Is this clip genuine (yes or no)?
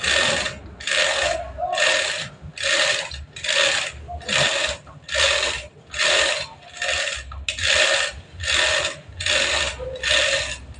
yes